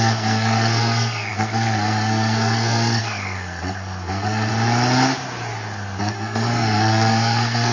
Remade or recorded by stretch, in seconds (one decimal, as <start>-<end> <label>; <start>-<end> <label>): 0.0-4.5 remade; 4.5-6.0 recorded; 6.0-7.7 remade